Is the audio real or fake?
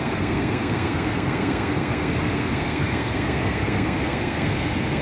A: fake